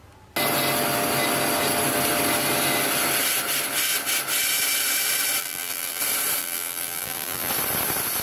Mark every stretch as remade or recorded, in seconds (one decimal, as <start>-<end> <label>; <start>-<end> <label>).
0.0-5.4 recorded; 5.4-6.0 remade; 6.0-6.4 recorded; 6.4-7.5 remade; 7.5-8.2 recorded